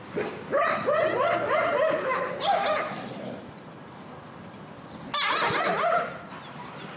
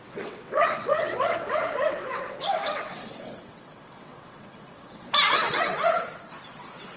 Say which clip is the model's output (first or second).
second